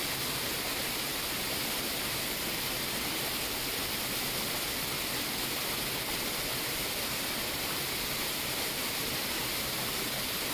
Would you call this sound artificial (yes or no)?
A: no